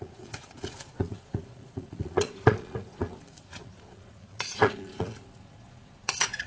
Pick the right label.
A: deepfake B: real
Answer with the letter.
A